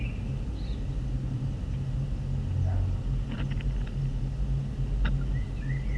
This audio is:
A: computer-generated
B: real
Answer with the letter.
B